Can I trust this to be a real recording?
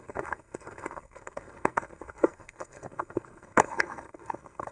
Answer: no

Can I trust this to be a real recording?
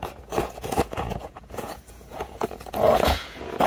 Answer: no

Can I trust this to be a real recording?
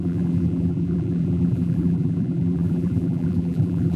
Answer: no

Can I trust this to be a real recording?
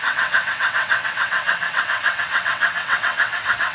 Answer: no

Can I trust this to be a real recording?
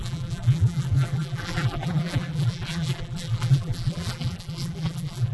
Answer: no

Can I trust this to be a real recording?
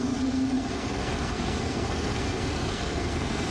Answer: no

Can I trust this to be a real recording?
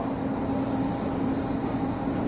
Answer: yes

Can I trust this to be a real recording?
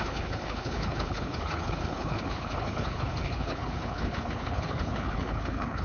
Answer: no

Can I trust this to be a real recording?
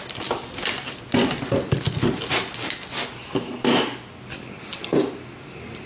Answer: yes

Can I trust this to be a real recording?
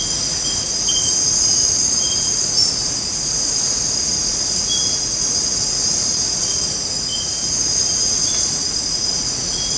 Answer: no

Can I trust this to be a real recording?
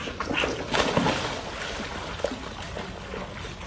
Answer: yes